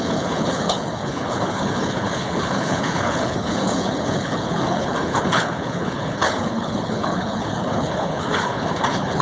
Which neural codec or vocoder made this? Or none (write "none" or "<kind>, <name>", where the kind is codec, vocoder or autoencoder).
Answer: codec, HILCodec